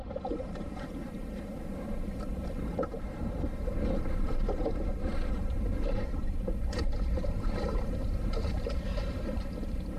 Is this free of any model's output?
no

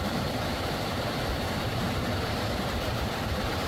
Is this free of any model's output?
no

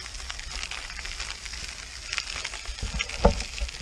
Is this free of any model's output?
yes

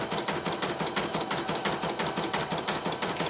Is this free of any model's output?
no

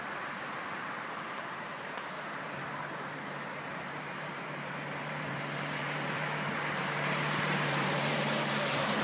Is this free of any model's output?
no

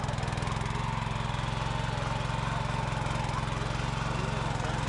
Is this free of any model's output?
yes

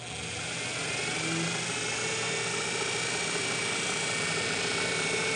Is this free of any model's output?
yes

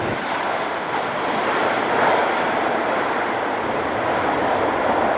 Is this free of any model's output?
no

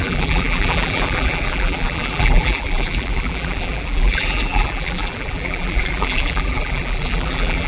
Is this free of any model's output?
no